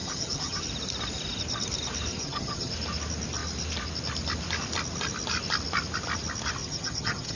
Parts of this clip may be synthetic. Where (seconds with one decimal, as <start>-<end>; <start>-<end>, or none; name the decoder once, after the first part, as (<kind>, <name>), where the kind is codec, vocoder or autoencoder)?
0.0-0.6 (vocoder, HiFi-GAN); 2.1-2.7; 6.6-7.4